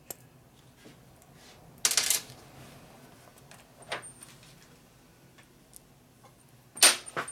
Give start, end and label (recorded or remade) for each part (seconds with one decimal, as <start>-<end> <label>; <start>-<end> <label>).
0.0-7.3 recorded